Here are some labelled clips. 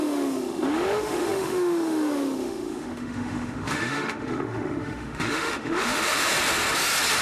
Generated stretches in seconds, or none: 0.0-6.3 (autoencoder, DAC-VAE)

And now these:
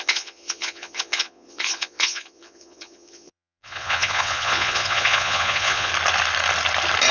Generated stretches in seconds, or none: 0.0-5.9 (vocoder, Vocos)

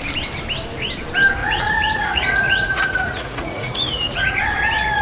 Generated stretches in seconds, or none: 1.4-4.4 (vocoder, Vocos)

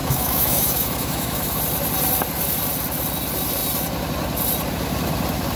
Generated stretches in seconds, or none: 0.0-1.6 (autoencoder, DAC-VAE)

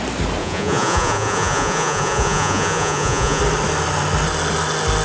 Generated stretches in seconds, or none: 0.4-3.4 (vocoder, Vocos)

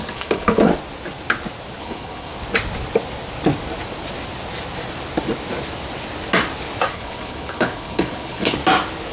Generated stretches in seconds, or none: 0.0-0.7 (codec, HILCodec); 1.8-2.3; 6.9-8.6

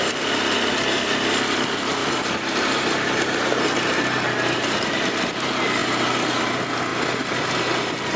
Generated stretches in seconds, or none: 2.0-4.0 (vocoder, BigVGAN v2)

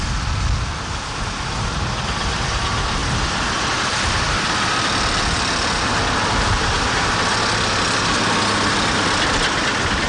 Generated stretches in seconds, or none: none